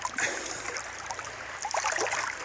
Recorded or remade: recorded